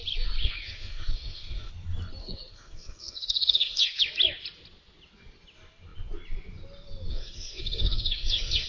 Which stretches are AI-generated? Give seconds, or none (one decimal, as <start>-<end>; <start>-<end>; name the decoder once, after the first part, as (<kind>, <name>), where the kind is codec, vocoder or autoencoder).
0.4-1.7 (codec, SNAC); 2.2-4.0; 7.1-8.7